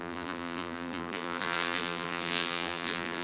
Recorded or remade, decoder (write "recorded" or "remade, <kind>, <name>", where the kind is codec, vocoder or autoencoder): remade, vocoder, BigVGAN v2